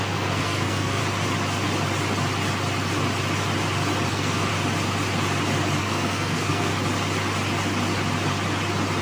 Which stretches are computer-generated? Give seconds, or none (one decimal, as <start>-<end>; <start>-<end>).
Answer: 0.0-1.0; 4.1-4.5; 5.8-6.7